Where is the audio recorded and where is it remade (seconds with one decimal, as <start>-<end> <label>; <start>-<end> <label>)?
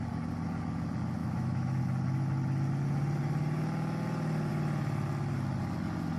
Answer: 0.0-1.2 recorded; 1.2-1.8 remade; 1.8-6.2 recorded